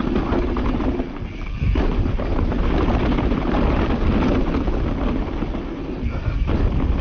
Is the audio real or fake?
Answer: real